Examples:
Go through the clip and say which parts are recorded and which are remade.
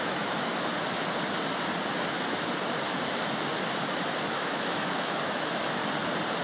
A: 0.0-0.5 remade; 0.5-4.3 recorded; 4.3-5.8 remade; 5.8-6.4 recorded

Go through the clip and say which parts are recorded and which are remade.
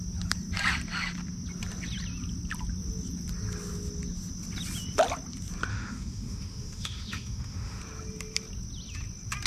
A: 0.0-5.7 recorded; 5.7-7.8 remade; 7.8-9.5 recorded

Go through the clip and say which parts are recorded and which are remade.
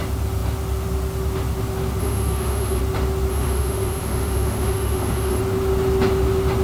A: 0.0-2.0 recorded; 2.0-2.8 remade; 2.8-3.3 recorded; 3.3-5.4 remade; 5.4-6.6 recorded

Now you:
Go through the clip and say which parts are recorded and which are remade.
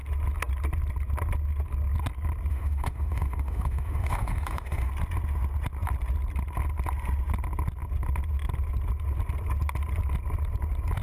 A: 0.0-2.5 recorded; 2.5-4.9 remade; 4.9-11.0 recorded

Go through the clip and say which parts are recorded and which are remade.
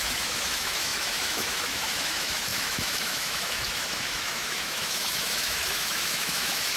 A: 0.0-6.8 remade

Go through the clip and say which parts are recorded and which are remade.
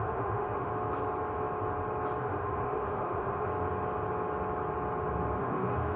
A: 0.0-0.7 remade; 0.7-2.2 recorded; 2.2-3.5 remade; 3.5-5.4 recorded; 5.4-6.0 remade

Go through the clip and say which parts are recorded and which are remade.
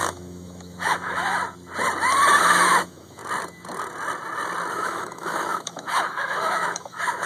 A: 0.0-1.4 remade; 1.4-2.4 recorded; 2.4-3.2 remade; 3.2-4.7 recorded; 4.7-7.3 remade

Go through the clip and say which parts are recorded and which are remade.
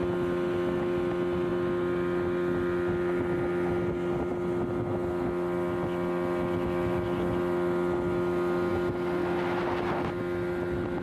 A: 0.0-11.0 recorded